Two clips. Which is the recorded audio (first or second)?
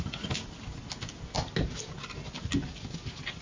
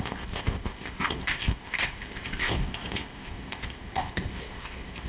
first